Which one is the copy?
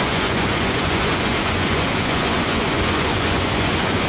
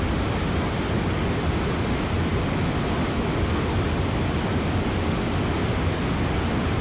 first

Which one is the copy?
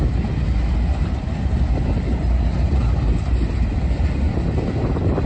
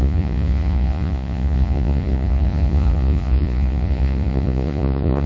second